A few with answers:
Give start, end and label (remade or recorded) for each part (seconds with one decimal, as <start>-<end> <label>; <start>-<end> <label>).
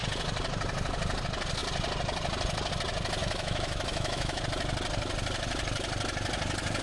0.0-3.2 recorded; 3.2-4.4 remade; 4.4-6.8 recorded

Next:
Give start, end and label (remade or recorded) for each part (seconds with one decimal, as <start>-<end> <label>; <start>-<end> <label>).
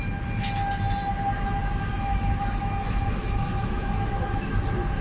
0.0-1.6 recorded; 1.6-4.6 remade; 4.6-5.0 recorded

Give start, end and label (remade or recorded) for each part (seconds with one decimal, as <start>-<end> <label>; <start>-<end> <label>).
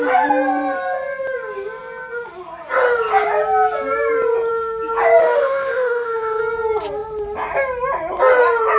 0.0-5.2 recorded; 5.2-6.4 remade; 6.4-8.8 recorded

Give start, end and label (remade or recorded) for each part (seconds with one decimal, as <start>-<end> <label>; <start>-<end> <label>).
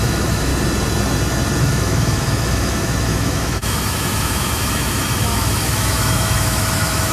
0.0-0.5 remade; 0.5-1.6 recorded; 1.6-7.1 remade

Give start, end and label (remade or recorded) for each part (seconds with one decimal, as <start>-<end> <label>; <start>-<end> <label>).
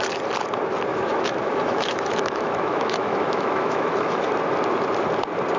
0.0-0.9 recorded; 0.9-4.3 remade; 4.3-5.6 recorded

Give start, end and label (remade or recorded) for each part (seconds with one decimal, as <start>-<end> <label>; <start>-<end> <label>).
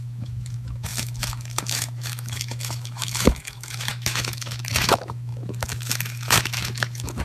0.0-7.2 remade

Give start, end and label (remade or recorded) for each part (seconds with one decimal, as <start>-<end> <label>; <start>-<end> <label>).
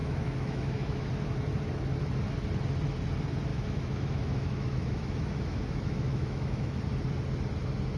0.0-1.1 remade; 1.1-3.5 recorded; 3.5-6.8 remade; 6.8-8.0 recorded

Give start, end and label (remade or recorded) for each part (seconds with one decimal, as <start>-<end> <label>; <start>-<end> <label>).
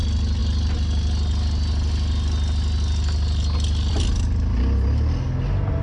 0.0-5.8 recorded